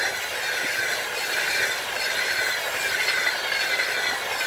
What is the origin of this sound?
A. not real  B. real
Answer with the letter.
B